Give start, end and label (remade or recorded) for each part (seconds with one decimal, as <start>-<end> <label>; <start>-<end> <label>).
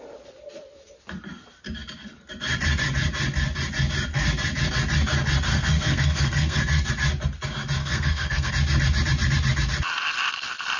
0.0-5.5 recorded; 5.5-6.9 remade; 6.9-7.8 recorded; 7.8-8.5 remade; 8.5-10.8 recorded